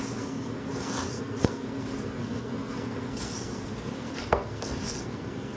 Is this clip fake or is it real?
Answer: fake